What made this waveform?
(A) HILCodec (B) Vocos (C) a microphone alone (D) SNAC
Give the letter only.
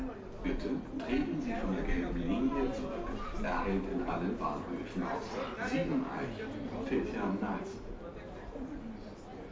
C